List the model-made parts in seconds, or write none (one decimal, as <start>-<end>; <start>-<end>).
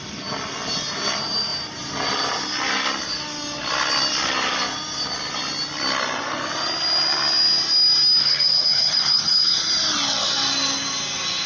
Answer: 8.2-9.6